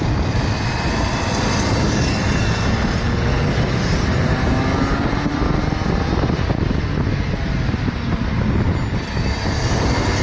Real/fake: real